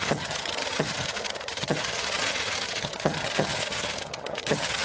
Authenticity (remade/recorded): remade